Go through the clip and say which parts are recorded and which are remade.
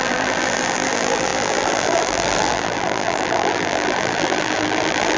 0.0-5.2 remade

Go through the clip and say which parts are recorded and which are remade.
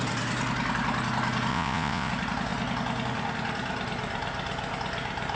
0.0-1.5 recorded; 1.5-2.1 remade; 2.1-5.4 recorded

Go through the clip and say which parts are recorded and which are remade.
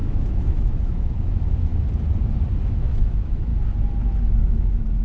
0.0-1.7 remade; 1.7-2.6 recorded; 2.6-3.5 remade; 3.5-4.4 recorded; 4.4-5.0 remade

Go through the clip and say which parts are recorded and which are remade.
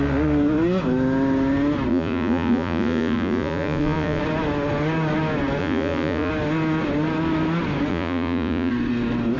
0.0-1.9 recorded; 1.9-4.2 remade; 4.2-5.6 recorded; 5.6-6.3 remade; 6.3-7.9 recorded; 7.9-8.7 remade; 8.7-9.4 recorded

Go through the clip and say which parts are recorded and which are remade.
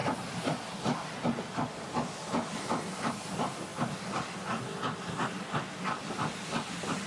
0.0-7.1 recorded